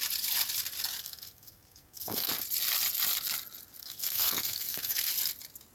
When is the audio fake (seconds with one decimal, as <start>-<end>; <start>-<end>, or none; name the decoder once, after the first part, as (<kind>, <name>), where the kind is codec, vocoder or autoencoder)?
1.0-2.3 (codec, SNAC); 3.8-5.1